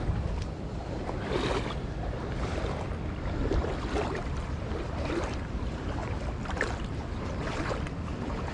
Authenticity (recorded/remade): remade